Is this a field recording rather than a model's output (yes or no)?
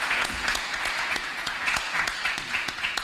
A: no